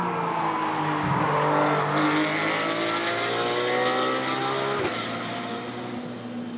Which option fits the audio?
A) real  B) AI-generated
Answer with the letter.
A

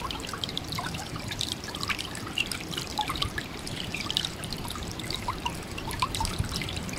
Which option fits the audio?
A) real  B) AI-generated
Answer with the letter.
B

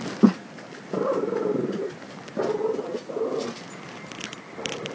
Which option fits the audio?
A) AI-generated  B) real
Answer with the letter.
A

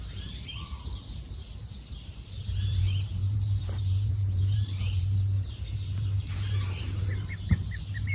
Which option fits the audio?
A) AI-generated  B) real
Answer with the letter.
A